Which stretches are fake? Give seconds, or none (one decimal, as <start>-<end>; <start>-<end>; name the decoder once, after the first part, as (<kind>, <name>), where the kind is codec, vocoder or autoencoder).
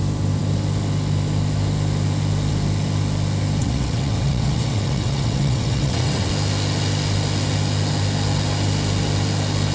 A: 3.6-6.3 (vocoder, WaveNeXt)